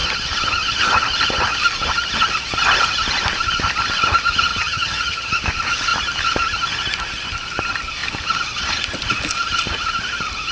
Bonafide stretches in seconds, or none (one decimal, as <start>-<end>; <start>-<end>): 0.0-4.5; 5.3-10.5